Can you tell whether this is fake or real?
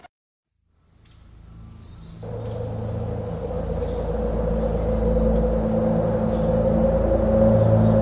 real